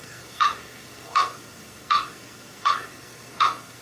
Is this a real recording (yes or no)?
no